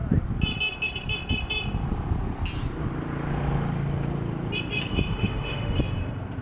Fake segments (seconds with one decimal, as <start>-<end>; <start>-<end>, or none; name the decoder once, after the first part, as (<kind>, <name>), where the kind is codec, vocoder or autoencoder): 4.9-5.8 (autoencoder, DAC-VAE)